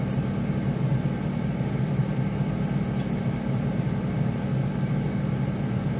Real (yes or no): yes